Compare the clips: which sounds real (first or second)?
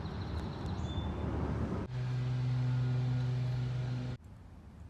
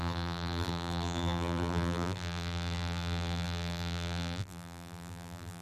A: first